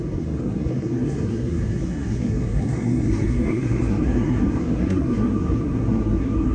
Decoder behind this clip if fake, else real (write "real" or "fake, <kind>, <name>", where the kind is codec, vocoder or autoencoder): fake, codec, SNAC